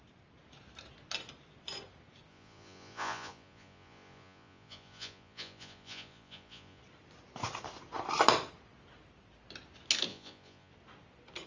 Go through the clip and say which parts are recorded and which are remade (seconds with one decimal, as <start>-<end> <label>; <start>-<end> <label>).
0.0-2.3 recorded; 2.3-6.8 remade; 6.8-10.1 recorded; 10.1-10.7 remade; 10.7-11.5 recorded